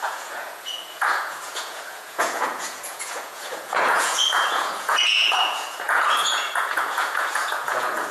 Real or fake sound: fake